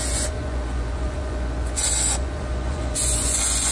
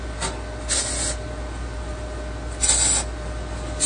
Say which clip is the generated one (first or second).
first